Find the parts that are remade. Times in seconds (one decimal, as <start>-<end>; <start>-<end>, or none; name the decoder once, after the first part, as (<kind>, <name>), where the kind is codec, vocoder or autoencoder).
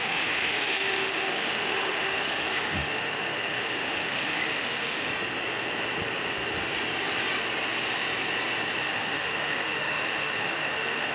0.0-5.1 (autoencoder, DAC-VAE); 8.8-11.1